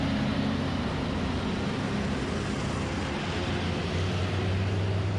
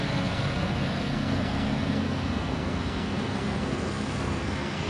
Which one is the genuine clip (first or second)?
first